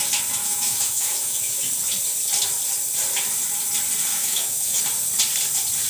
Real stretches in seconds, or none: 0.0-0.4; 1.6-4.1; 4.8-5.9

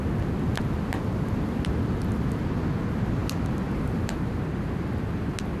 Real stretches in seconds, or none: 0.0-5.6

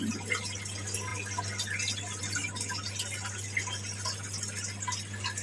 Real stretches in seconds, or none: 0.0-5.4